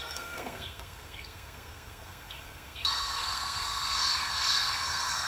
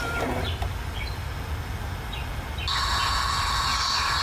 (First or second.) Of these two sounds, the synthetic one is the first